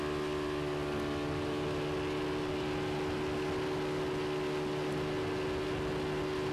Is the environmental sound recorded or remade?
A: recorded